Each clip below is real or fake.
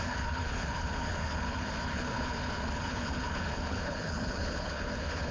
fake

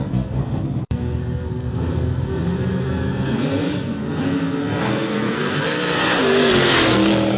fake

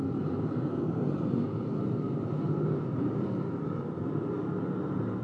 fake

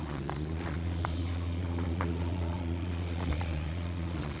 fake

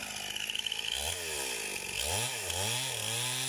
real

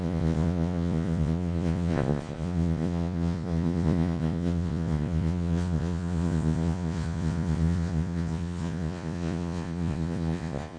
fake